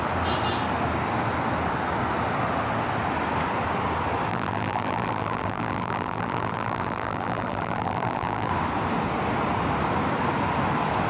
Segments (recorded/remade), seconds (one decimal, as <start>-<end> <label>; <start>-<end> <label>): 0.0-4.3 recorded; 4.3-8.5 remade; 8.5-11.1 recorded